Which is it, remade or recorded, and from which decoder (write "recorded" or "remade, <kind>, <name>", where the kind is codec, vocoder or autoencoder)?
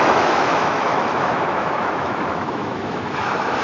remade, autoencoder, DAC-VAE